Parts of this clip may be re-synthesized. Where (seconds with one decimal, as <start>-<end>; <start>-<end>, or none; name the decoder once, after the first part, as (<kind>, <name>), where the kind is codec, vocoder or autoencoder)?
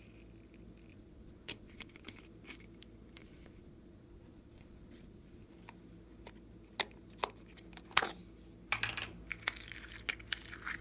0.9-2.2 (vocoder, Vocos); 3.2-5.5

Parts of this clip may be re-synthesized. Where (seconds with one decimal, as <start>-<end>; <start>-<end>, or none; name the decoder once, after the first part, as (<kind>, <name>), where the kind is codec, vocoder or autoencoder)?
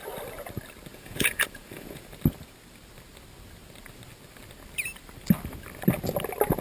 0.9-2.1 (vocoder, Vocos)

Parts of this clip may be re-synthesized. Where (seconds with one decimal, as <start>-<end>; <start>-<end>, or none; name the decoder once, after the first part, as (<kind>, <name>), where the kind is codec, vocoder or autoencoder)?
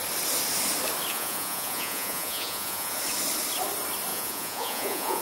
1.1-3.0 (vocoder, Vocos); 4.1-5.2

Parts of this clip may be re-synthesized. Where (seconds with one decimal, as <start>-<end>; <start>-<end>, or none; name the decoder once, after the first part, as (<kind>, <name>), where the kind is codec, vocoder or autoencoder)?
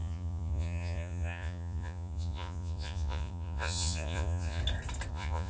0.0-4.6 (vocoder, Vocos); 5.1-5.5